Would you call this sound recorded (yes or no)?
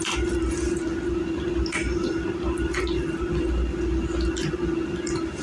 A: yes